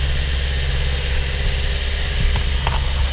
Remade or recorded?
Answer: recorded